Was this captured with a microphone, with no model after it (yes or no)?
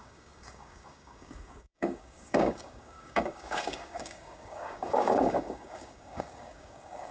no